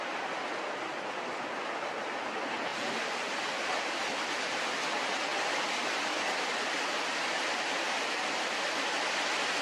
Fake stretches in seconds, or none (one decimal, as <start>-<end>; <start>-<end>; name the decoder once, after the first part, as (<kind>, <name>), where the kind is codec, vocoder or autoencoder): 2.7-3.8 (vocoder, BigVGAN v2); 5.3-9.6